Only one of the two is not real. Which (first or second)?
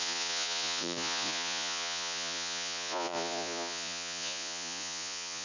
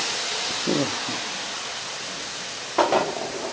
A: first